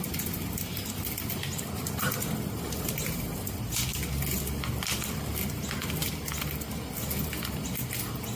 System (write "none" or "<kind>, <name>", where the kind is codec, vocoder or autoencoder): none